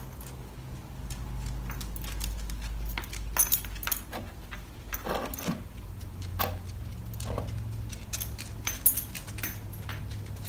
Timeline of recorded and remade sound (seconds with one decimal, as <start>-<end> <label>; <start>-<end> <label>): 0.0-10.5 recorded